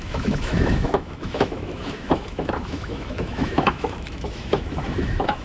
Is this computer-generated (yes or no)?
yes